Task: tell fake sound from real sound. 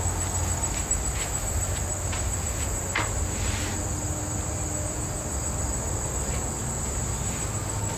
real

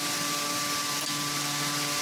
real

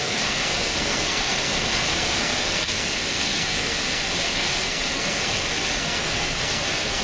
fake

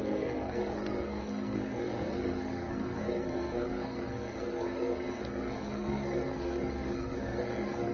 fake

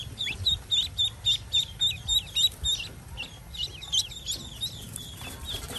real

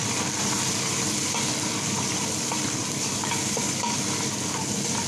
fake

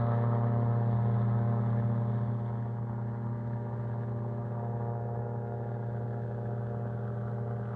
real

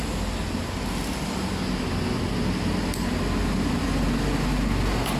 real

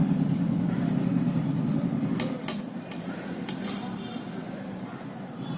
fake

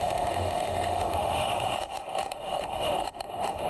fake